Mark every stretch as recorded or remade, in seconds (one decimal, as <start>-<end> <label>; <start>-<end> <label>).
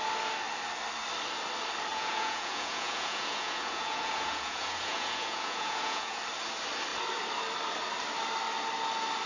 0.0-1.9 recorded; 1.9-6.2 remade; 6.2-9.3 recorded